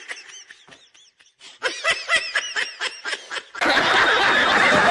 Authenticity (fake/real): real